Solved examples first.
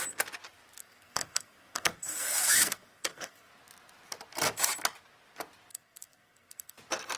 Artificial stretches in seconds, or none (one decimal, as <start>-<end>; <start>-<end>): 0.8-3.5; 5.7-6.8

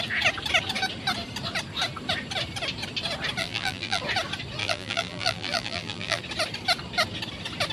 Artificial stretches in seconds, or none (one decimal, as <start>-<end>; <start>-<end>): 3.4-4.0; 4.6-6.2

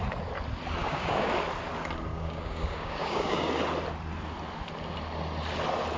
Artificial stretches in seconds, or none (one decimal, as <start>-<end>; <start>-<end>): 0.8-1.3; 2.1-3.5

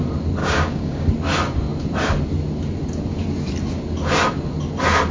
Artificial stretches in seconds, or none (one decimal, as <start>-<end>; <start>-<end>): 0.4-1.1

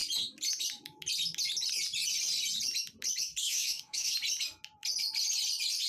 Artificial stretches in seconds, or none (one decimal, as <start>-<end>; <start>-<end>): 3.4-4.1

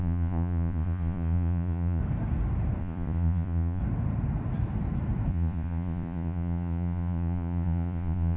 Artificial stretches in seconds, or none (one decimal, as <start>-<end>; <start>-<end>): 0.0-2.0; 2.8-3.8; 5.3-8.4

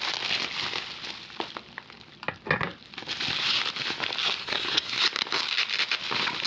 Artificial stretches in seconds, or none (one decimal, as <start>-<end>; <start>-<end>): 4.4-5.0

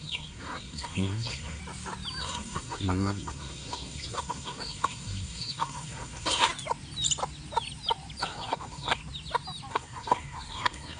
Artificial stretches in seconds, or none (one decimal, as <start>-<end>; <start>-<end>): 0.0-1.6; 2.2-6.5; 8.2-9.0; 9.7-11.0